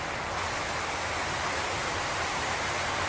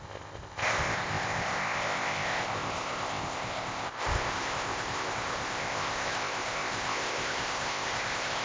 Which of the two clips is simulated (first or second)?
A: second